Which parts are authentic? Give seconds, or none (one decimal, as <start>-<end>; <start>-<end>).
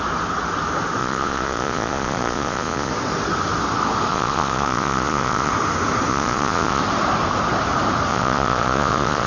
0.0-1.0; 2.9-4.1; 5.5-6.1; 6.8-8.1